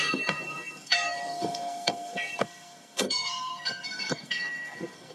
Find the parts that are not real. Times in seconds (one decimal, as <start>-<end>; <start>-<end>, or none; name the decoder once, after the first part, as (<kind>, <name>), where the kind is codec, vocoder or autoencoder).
0.0-5.1 (codec, SNAC)